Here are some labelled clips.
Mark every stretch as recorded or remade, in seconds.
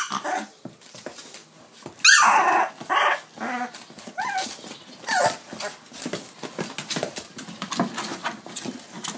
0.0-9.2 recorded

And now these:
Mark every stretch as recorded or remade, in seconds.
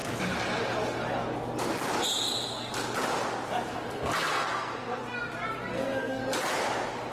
0.0-4.3 recorded; 4.3-5.0 remade; 5.0-5.7 recorded; 5.7-6.2 remade; 6.2-7.1 recorded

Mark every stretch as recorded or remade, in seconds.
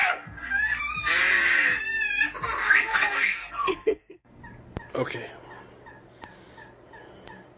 0.0-0.8 remade; 0.8-2.6 recorded; 2.6-4.4 remade; 4.4-7.6 recorded